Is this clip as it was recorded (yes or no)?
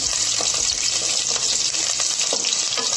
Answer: yes